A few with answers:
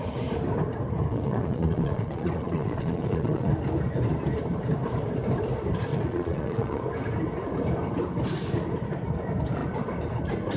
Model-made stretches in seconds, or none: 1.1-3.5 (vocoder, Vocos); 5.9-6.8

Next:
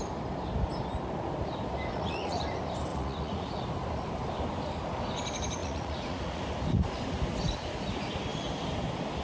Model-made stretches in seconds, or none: 1.9-2.4 (vocoder, Vocos); 2.9-3.6; 5.6-6.4